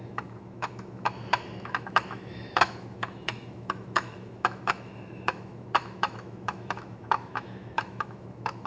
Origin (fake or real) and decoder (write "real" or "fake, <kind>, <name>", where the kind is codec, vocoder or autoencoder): fake, autoencoder, DAC-VAE